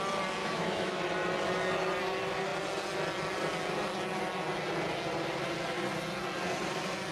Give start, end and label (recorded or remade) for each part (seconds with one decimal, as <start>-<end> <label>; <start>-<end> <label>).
0.0-0.4 recorded; 0.4-1.0 remade; 1.0-7.1 recorded